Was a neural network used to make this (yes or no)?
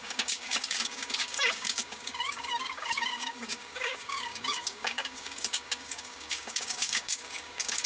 yes